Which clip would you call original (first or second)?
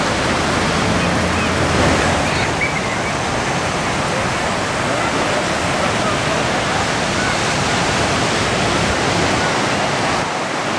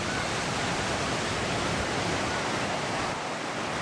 first